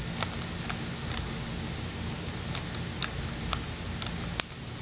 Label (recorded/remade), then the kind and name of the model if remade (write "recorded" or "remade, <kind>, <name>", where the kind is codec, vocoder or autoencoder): recorded